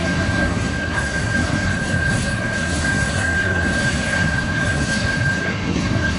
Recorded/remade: remade